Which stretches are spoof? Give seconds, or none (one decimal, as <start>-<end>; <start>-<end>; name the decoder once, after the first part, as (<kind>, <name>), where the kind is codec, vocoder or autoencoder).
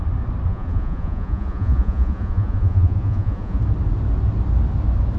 0.5-3.6 (vocoder, Vocos)